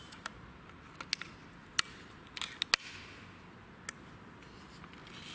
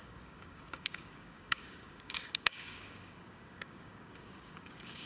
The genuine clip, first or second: first